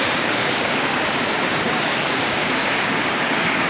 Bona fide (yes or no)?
no